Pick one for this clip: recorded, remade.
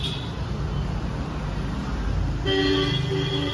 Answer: recorded